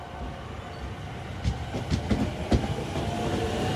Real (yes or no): yes